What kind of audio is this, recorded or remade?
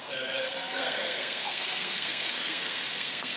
remade